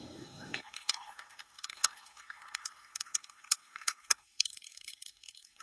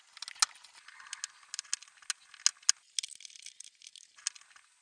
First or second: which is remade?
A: first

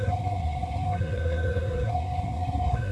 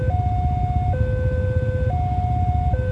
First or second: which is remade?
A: first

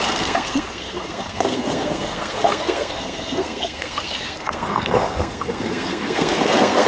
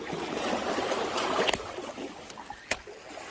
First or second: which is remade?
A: first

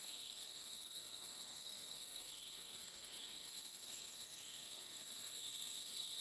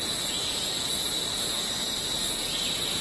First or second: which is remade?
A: first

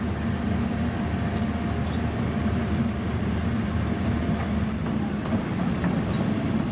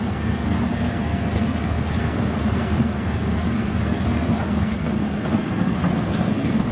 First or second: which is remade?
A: second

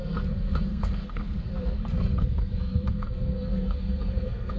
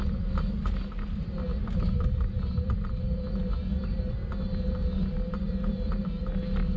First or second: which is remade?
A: first